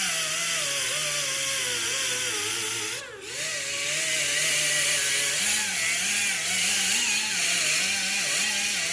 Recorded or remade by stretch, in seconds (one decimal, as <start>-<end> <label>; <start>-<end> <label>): 0.0-8.9 recorded